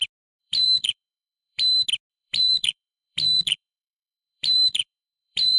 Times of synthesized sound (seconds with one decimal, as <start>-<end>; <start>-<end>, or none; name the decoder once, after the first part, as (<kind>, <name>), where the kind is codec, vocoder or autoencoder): 0.4-1.6 (vocoder, BigVGAN v2); 2.1-5.6